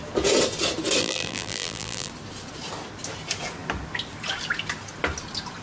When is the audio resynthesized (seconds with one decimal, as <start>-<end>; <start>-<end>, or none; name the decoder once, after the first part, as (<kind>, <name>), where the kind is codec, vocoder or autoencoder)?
1.0-2.1 (vocoder, BigVGAN v2)